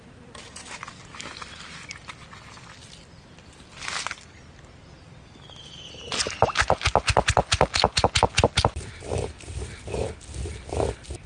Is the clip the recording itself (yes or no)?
yes